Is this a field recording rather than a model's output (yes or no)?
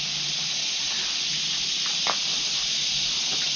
yes